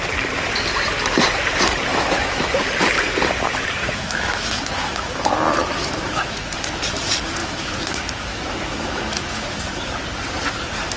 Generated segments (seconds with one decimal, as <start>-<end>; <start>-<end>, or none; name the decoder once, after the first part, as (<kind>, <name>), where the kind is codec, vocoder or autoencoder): 1.9-2.5 (autoencoder, DAC-VAE); 3.8-5.3; 5.8-6.5; 7.4-9.6